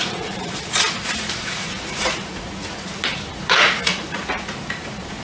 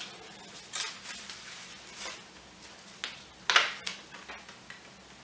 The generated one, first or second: first